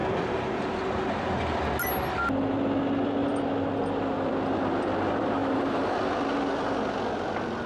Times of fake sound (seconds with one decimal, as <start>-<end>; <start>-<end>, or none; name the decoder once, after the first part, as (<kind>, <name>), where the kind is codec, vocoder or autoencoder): 5.4-6.0 (vocoder, BigVGAN v2)